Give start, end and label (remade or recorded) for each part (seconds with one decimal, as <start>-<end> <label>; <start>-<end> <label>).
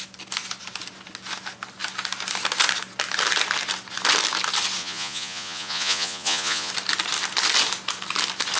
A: 0.0-4.8 recorded; 4.8-6.7 remade; 6.7-8.6 recorded